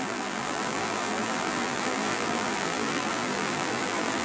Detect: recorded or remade remade